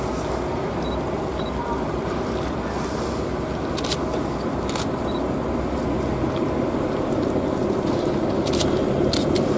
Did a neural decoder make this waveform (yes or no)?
no